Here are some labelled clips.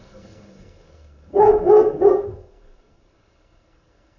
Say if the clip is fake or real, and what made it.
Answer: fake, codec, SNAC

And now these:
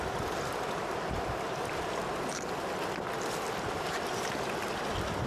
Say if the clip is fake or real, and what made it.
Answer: real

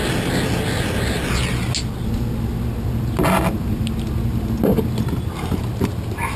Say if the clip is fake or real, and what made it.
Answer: real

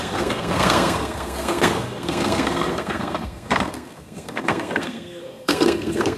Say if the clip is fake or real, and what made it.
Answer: fake, codec, SNAC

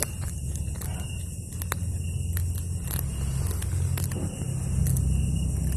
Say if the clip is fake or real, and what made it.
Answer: real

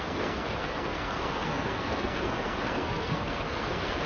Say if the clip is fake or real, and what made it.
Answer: fake, codec, SNAC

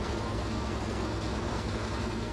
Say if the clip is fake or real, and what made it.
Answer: fake, codec, SNAC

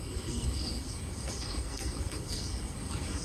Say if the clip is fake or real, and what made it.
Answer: fake, codec, SNAC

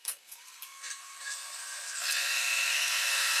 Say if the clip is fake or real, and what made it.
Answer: fake, codec, SNAC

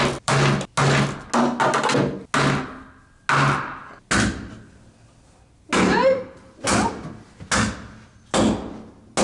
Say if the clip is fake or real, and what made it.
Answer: real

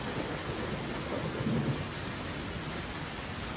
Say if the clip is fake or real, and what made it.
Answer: real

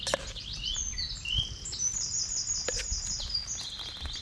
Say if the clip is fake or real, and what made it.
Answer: real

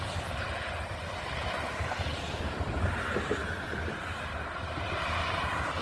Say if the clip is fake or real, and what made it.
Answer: real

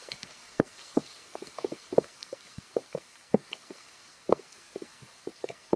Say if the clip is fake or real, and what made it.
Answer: fake, codec, SNAC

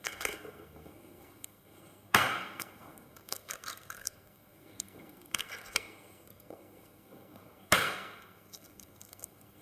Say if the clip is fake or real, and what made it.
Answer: fake, codec, SNAC